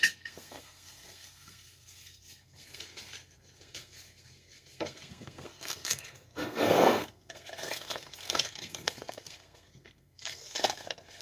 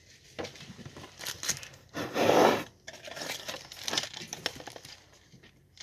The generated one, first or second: first